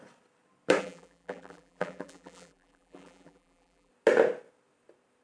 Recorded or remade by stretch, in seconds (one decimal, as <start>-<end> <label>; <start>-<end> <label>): 0.0-0.8 recorded; 0.8-3.9 remade; 3.9-5.2 recorded